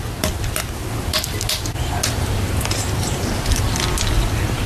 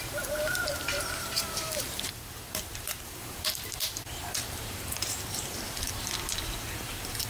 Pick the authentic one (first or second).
first